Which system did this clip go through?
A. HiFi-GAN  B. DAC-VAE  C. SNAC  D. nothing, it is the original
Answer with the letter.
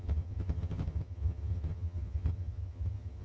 A